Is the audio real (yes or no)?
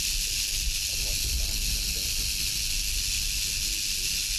yes